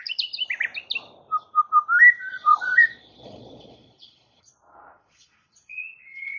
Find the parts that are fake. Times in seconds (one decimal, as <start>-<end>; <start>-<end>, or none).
2.3-6.4